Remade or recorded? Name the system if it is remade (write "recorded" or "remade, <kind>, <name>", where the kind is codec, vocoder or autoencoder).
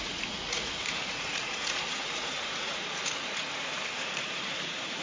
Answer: remade, vocoder, Vocos